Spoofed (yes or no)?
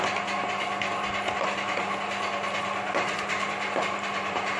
no